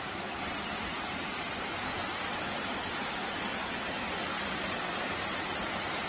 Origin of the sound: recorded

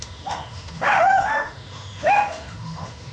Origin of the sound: remade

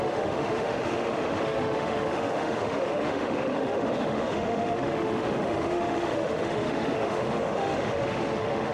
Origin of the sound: remade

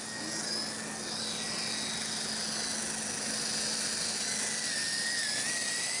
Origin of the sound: recorded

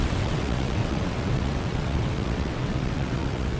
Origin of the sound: remade